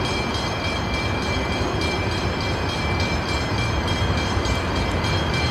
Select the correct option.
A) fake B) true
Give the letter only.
A